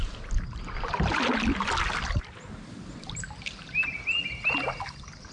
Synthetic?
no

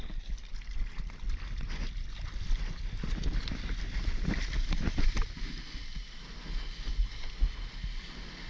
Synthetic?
no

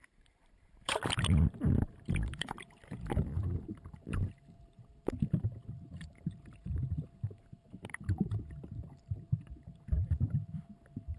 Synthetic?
yes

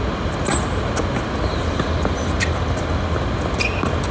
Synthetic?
no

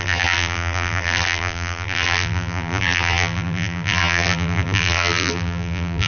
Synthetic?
yes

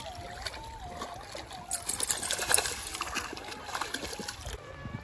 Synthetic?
no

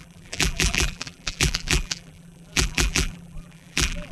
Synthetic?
yes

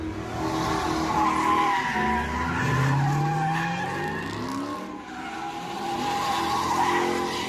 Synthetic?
no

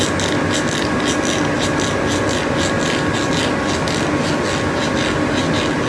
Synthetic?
no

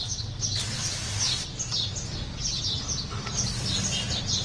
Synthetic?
no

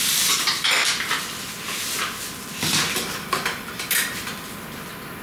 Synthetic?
no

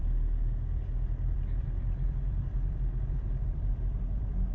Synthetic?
yes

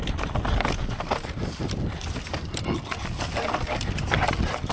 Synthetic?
no